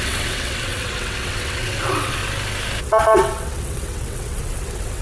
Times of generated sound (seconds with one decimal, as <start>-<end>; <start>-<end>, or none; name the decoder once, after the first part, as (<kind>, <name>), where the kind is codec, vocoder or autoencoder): 0.0-2.2 (vocoder, WaveNeXt); 2.8-5.0